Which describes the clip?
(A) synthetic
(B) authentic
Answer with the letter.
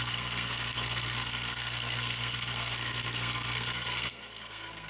A